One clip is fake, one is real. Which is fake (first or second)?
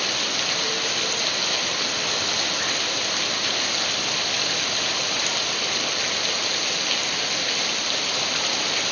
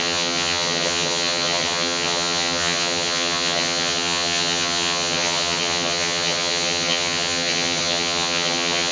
second